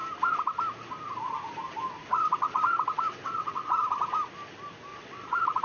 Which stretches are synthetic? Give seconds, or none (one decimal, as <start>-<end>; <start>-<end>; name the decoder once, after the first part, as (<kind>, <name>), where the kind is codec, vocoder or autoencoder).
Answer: 2.0-3.7 (vocoder, WaveNeXt); 4.9-5.6